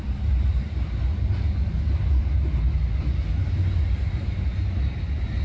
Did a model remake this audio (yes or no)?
no